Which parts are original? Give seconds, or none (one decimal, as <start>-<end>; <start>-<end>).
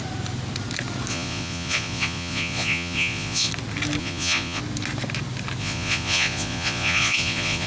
0.0-1.1; 3.5-4.0; 4.6-5.6